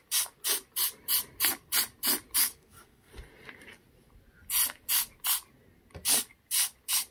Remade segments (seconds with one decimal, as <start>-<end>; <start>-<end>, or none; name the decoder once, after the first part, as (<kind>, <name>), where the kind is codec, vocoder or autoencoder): 2.4-3.1 (codec, SNAC)